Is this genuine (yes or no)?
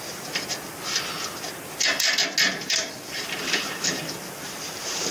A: yes